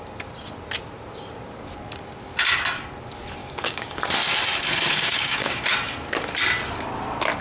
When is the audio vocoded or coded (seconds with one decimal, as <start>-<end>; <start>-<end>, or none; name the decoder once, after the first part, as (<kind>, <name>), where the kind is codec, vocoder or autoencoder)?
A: 3.4-4.0 (codec, DAC); 4.9-5.7